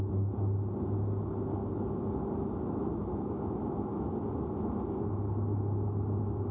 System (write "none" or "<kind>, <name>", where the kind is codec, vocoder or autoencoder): none